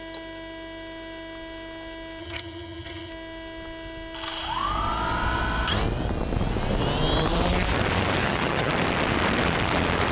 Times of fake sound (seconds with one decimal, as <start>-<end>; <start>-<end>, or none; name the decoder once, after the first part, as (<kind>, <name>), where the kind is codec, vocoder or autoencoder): 2.2-3.1 (vocoder, HiFi-GAN); 8.2-8.7